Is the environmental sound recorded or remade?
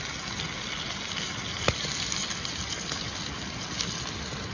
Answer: recorded